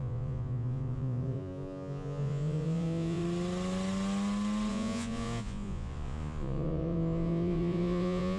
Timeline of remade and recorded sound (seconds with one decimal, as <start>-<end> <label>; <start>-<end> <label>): 0.0-3.2 remade; 3.2-4.7 recorded; 4.7-8.4 remade